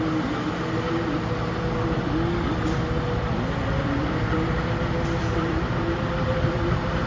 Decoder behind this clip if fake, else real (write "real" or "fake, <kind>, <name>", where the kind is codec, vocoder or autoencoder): real